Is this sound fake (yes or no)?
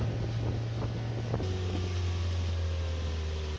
no